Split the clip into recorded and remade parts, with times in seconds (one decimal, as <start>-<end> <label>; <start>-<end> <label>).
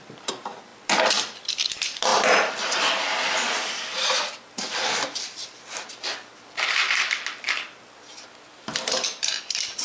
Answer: 0.0-9.8 remade